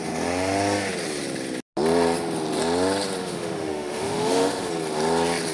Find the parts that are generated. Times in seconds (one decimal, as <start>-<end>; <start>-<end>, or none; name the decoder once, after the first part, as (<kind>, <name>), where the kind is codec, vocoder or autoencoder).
3.2-4.7 (autoencoder, DAC-VAE)